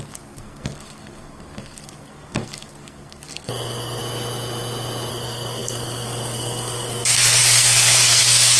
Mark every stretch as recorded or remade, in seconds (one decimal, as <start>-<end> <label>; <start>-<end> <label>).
0.0-4.0 remade; 4.0-5.1 recorded; 5.1-8.6 remade